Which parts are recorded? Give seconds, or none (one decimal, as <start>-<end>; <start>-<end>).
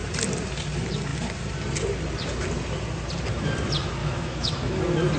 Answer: 0.0-4.0; 4.8-5.2